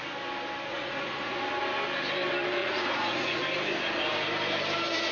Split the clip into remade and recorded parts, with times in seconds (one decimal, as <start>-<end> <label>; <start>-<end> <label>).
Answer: 0.0-0.7 recorded; 0.7-1.4 remade; 1.4-2.6 recorded; 2.6-3.4 remade; 3.4-5.1 recorded